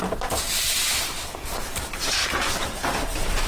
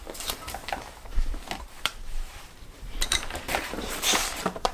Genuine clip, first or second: first